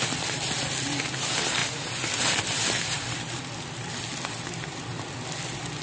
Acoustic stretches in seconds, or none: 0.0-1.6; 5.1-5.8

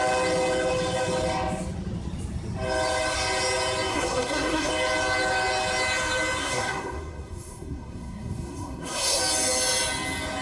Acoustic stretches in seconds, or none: 0.0-3.9; 4.7-6.4; 9.2-10.4

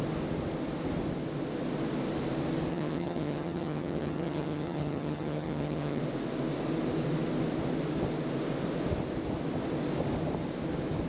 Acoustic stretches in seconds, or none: 0.0-2.7; 6.0-11.1

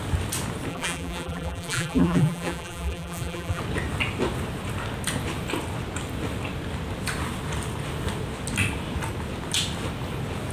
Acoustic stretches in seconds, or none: 0.0-0.7; 3.6-10.5

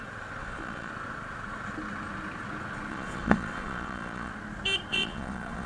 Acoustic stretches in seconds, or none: 0.0-0.4; 0.9-2.9; 4.3-4.9

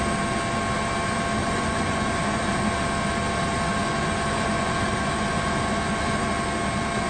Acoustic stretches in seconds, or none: 0.0-1.4; 2.6-3.8; 6.3-7.1

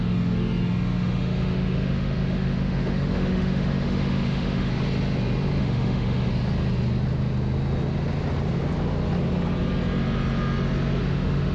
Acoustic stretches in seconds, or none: 4.7-5.6; 6.3-11.0

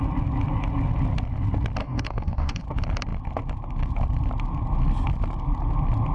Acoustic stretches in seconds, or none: 0.0-1.8; 2.6-6.1